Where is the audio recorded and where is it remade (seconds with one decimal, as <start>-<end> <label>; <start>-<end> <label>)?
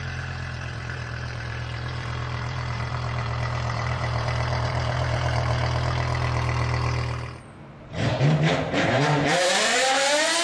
0.0-5.6 remade; 5.6-7.8 recorded; 7.8-10.4 remade